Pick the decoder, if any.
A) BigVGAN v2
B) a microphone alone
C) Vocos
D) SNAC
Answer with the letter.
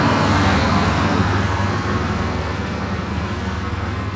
D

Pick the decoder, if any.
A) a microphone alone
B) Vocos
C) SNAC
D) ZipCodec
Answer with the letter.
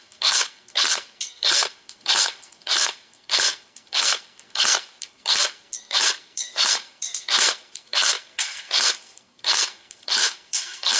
C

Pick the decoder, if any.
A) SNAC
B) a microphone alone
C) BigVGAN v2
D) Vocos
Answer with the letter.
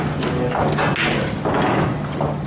B